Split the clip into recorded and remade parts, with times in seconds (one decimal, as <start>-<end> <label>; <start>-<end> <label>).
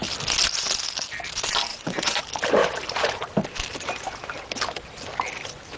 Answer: 0.0-1.7 recorded; 1.7-2.2 remade; 2.2-5.8 recorded